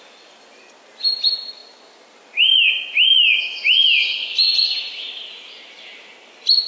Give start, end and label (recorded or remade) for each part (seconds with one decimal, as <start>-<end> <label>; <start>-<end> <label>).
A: 0.0-6.7 recorded

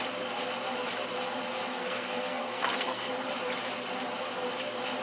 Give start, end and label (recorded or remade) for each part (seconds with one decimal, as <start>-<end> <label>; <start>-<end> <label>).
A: 0.0-1.7 recorded; 1.7-3.1 remade; 3.1-5.0 recorded